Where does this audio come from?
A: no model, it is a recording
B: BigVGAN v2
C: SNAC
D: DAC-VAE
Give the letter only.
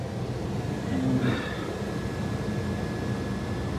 A